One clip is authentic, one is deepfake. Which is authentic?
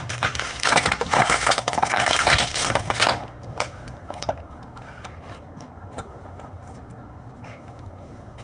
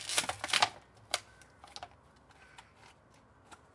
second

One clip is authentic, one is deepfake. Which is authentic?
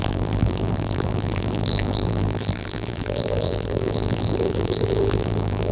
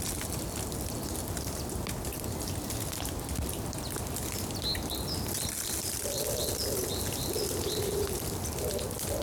second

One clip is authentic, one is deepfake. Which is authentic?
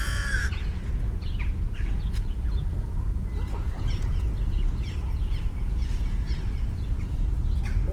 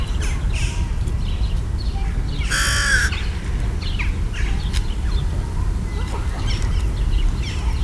second